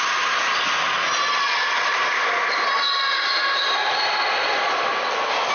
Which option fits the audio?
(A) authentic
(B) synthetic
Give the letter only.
A